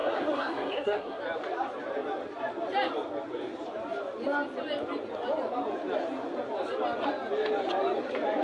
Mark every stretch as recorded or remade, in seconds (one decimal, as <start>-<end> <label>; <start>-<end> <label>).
0.0-1.2 remade; 1.2-8.4 recorded